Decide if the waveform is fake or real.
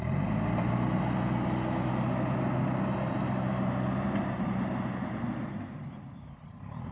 real